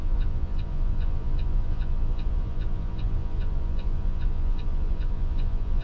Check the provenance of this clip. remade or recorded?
remade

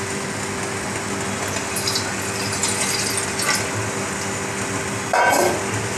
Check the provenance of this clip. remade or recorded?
recorded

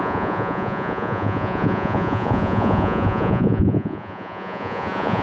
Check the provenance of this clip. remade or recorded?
remade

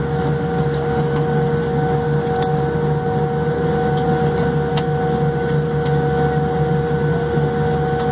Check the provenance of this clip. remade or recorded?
recorded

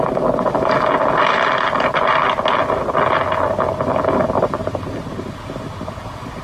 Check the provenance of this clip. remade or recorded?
recorded